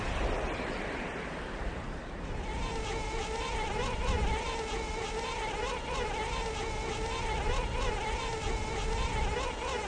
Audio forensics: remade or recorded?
recorded